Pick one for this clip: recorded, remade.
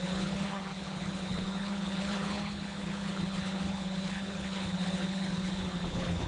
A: remade